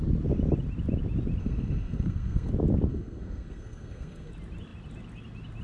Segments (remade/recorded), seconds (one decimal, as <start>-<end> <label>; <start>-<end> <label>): 0.0-1.4 recorded; 1.4-2.5 remade; 2.5-2.9 recorded; 2.9-4.3 remade; 4.3-5.6 recorded